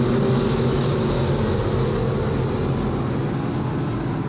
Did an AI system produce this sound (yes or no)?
no